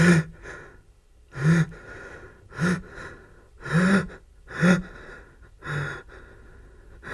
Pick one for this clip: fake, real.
real